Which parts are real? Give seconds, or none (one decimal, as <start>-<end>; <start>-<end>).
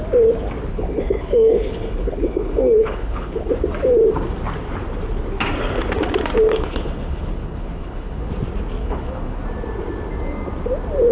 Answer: 0.0-0.7; 3.5-6.5; 8.3-8.8; 9.4-11.1